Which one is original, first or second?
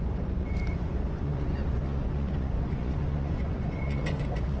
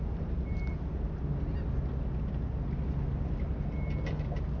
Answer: second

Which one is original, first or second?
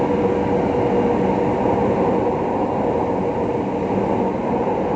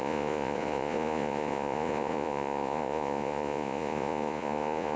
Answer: first